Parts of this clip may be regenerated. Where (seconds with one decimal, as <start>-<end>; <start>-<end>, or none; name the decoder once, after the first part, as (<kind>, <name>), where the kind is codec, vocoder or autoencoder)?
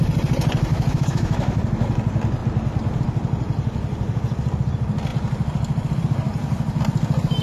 0.7-1.6 (autoencoder, DAC-VAE)